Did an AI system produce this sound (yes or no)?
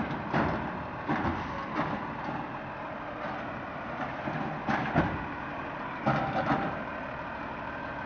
no